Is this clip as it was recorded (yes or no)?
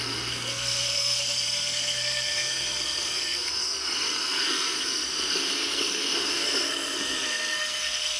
no